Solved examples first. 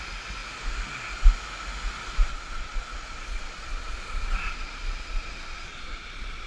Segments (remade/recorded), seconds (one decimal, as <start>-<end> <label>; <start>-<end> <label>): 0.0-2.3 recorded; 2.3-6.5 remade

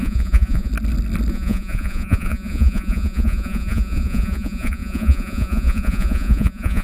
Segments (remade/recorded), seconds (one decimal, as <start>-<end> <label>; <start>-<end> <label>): 0.0-0.7 remade; 0.7-1.3 recorded; 1.3-6.8 remade

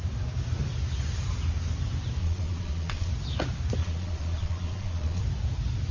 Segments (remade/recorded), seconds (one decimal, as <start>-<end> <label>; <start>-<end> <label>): 0.0-2.2 recorded; 2.2-3.1 remade; 3.1-3.8 recorded; 3.8-5.2 remade; 5.2-5.9 recorded

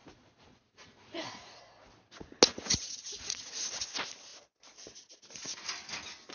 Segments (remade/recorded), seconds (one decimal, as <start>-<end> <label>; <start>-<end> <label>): 0.0-1.6 remade; 1.6-2.5 recorded; 2.5-3.7 remade; 3.7-6.3 recorded

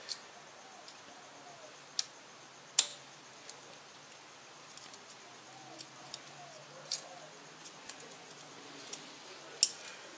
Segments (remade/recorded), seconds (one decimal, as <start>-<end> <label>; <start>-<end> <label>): 0.0-7.6 recorded; 7.6-8.3 remade; 8.3-10.2 recorded

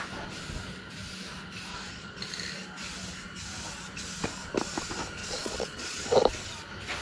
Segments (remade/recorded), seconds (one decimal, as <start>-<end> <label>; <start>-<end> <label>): 0.0-1.7 recorded; 1.7-2.3 remade; 2.3-5.2 recorded; 5.2-6.0 remade; 6.0-7.0 recorded

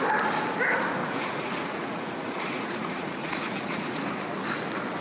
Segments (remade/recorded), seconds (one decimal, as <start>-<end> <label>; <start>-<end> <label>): 0.0-1.0 recorded; 1.0-4.0 remade; 4.0-5.0 recorded